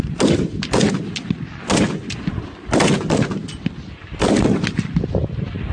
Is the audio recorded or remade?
recorded